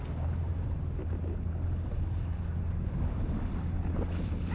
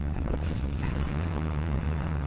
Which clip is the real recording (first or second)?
first